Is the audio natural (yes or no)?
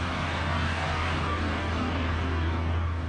no